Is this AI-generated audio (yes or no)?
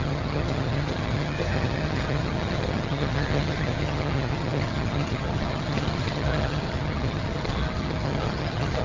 yes